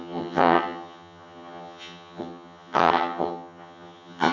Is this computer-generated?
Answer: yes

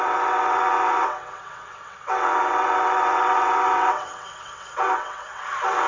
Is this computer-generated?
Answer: yes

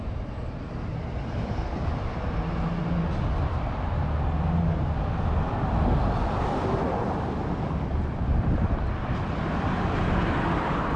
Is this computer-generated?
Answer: no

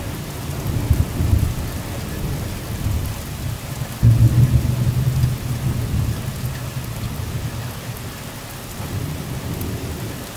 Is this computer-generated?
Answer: no